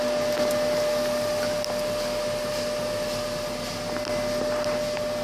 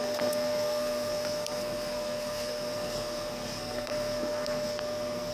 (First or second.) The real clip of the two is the first